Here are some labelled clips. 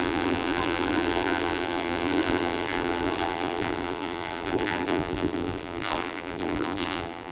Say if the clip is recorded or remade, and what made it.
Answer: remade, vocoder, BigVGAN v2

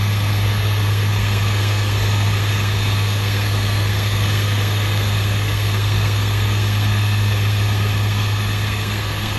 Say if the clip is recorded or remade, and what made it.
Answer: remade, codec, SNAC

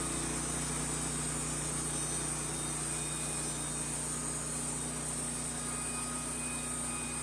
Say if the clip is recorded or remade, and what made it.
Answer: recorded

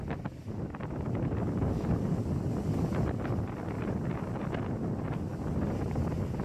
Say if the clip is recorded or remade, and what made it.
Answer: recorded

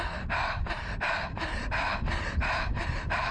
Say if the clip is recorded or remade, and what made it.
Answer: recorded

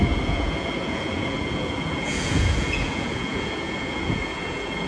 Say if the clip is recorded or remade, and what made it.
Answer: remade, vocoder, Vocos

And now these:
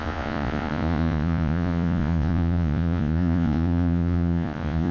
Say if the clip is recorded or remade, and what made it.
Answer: remade, vocoder, Vocos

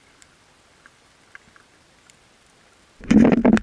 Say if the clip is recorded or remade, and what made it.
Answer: recorded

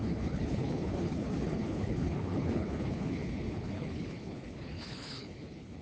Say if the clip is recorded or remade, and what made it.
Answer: remade, codec, HILCodec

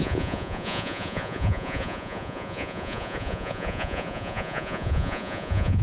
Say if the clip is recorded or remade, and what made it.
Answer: remade, vocoder, Vocos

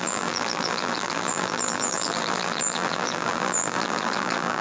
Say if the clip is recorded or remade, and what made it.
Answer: remade, vocoder, BigVGAN v2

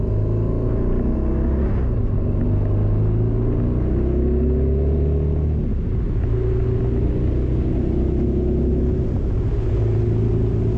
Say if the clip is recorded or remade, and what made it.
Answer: recorded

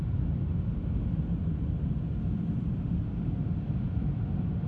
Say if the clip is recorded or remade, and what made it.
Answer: recorded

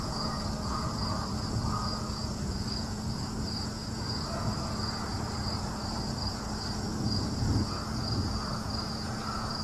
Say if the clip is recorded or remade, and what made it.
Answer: remade, vocoder, Vocos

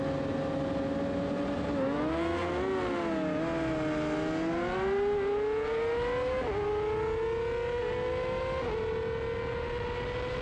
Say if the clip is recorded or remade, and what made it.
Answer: recorded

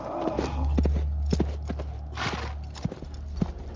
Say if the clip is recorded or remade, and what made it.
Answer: recorded